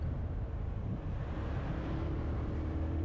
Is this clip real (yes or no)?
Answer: yes